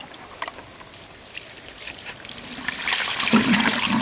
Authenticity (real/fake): fake